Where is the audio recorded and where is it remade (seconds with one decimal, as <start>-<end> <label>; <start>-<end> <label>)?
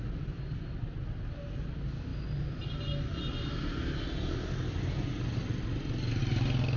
0.0-6.8 recorded